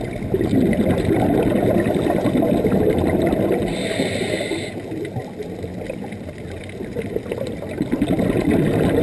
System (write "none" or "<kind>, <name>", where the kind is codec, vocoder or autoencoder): none